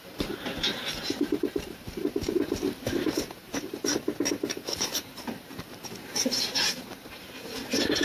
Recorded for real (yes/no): no